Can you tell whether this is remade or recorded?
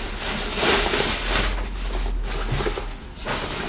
recorded